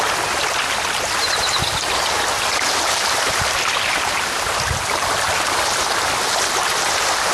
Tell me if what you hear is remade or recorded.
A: recorded